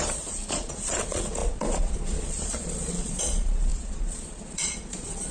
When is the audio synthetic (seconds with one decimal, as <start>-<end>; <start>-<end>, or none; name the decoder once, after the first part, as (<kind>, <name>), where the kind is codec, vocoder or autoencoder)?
0.0-5.3 (vocoder, Vocos)